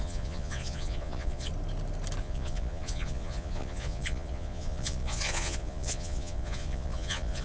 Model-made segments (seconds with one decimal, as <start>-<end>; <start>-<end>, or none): 0.0-1.5; 2.2-7.4